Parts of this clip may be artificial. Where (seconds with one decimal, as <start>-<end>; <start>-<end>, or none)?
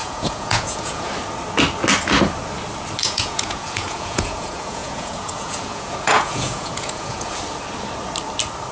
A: 0.0-1.1; 3.0-7.4